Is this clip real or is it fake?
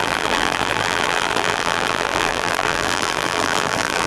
fake